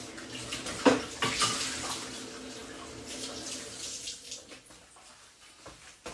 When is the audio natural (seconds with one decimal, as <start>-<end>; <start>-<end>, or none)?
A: 0.0-6.1